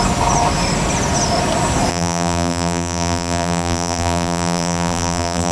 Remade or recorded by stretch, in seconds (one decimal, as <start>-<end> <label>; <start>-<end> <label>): 0.0-1.9 recorded; 1.9-5.5 remade